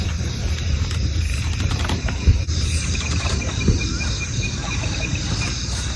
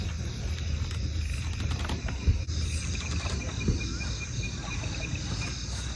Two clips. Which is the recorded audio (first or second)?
second